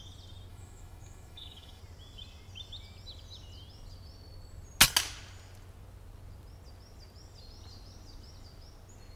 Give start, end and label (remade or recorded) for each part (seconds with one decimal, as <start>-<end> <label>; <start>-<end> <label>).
0.0-0.5 recorded; 0.5-1.8 remade; 1.8-9.2 recorded